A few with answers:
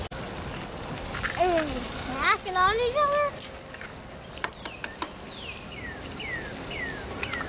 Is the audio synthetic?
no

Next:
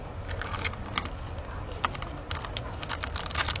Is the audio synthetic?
no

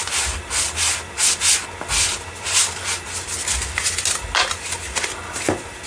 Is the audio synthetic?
no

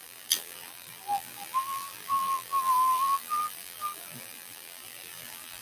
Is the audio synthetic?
yes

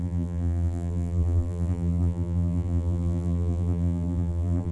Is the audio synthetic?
yes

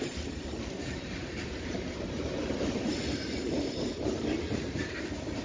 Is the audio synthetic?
yes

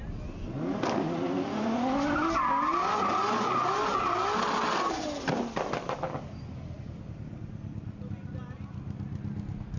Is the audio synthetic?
no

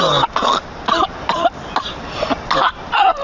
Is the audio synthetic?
no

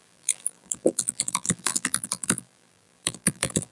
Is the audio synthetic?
yes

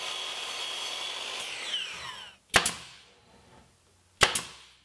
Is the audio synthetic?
no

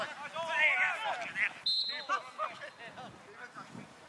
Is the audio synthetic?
no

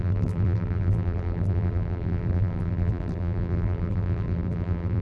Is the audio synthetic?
yes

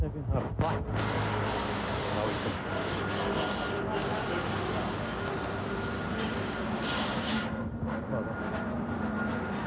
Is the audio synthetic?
no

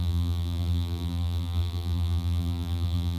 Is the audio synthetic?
yes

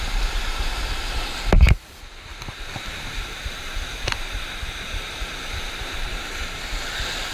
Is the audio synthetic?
yes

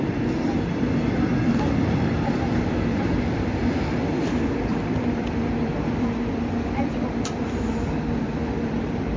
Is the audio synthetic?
yes